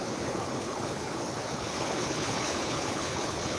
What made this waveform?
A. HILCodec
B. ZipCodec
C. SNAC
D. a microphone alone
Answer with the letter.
A